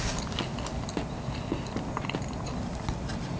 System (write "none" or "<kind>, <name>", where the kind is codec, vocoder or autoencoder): none